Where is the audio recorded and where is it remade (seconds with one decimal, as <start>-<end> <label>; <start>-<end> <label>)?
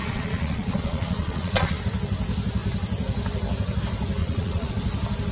0.0-1.8 remade; 1.8-4.2 recorded; 4.2-4.7 remade; 4.7-5.3 recorded